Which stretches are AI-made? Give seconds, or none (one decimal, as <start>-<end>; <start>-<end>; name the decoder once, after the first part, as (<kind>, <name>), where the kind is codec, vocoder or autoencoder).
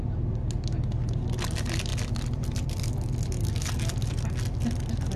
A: 1.9-2.9 (vocoder, BigVGAN v2)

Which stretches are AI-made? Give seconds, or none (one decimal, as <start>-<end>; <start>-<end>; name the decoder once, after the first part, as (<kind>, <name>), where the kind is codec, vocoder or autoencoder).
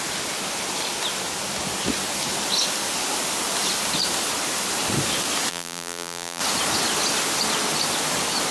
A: 5.5-6.4 (vocoder, BigVGAN v2)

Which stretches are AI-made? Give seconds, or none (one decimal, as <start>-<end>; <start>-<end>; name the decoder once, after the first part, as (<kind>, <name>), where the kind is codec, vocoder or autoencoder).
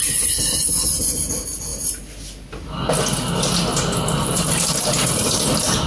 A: 3.7-5.4 (vocoder, BigVGAN v2)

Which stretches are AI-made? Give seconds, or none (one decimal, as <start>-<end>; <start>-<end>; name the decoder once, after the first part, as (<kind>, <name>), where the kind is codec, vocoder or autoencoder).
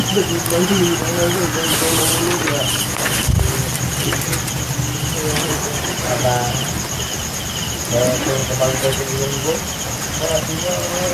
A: none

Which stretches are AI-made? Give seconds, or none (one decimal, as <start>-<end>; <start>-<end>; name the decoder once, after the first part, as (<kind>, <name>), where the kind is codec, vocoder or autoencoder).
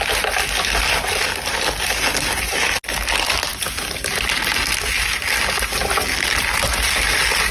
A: none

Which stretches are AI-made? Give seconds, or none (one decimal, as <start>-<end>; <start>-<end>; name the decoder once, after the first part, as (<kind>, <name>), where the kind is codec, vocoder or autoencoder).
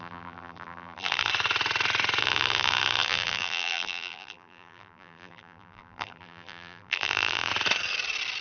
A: 0.0-1.3 (vocoder, BigVGAN v2); 2.2-7.5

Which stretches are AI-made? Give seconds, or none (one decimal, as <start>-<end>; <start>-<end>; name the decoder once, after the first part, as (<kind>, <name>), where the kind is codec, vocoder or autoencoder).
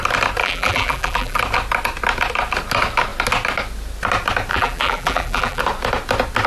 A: 0.4-1.4 (vocoder, BigVGAN v2); 4.5-5.6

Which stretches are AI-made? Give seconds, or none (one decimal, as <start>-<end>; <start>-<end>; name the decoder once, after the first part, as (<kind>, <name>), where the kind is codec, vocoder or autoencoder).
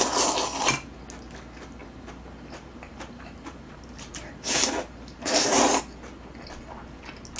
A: 1.8-5.8 (vocoder, BigVGAN v2)